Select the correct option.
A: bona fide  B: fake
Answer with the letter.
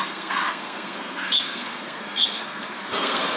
B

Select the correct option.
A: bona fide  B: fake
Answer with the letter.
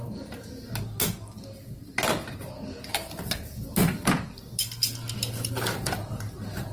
A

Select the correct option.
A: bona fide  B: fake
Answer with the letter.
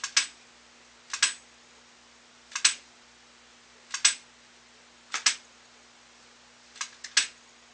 A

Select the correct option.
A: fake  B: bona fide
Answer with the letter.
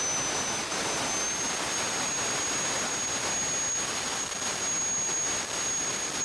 B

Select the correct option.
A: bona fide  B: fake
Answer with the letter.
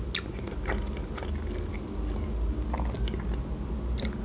A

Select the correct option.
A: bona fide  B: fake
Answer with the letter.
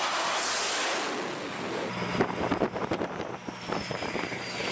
A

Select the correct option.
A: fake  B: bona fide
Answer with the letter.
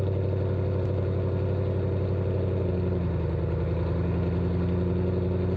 B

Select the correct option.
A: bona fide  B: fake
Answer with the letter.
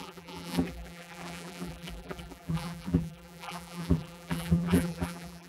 B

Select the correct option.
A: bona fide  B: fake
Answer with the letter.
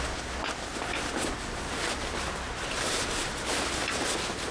A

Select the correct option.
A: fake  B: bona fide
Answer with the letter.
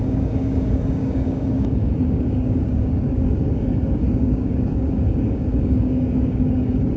A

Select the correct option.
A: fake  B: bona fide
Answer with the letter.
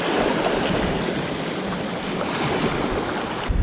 B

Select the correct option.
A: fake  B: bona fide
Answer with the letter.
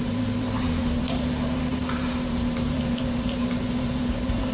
A